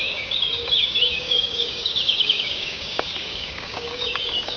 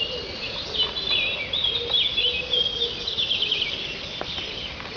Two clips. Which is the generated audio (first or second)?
first